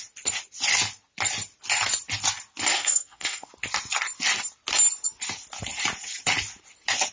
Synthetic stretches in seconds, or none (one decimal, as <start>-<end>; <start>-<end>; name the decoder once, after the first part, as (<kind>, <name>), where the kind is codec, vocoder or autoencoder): 2.7-3.5 (codec, SNAC)

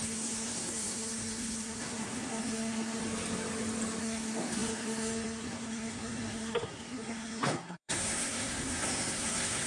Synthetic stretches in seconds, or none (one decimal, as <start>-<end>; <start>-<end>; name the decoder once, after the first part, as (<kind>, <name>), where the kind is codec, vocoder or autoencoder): 0.0-3.0 (codec, SNAC); 4.0-9.7

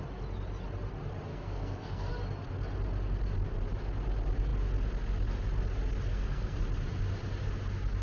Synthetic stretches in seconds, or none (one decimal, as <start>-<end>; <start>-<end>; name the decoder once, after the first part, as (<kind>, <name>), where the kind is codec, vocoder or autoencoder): 1.3-2.1 (codec, SNAC); 6.1-6.6

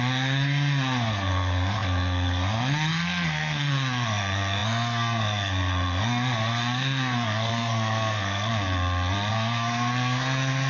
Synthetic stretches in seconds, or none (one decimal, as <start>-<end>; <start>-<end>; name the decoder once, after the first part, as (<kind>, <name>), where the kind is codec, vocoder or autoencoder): 0.0-8.5 (codec, SNAC); 9.3-10.7

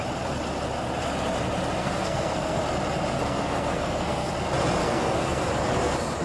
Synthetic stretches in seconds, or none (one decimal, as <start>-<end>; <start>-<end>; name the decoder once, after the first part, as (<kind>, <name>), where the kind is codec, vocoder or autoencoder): 1.8-2.6 (codec, SNAC); 3.1-4.3; 4.8-5.5

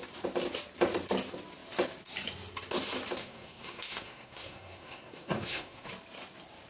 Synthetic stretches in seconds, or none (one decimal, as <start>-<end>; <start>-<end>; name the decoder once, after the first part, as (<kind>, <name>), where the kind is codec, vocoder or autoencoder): 3.2-5.9 (codec, SNAC)